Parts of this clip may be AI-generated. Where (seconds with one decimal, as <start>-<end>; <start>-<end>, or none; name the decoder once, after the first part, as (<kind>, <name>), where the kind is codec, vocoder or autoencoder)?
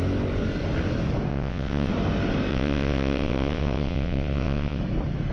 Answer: 1.3-1.9 (vocoder, WaveNeXt); 2.5-4.8